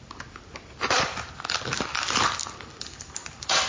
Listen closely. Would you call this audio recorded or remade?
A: recorded